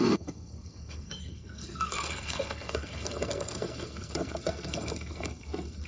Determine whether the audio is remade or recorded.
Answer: remade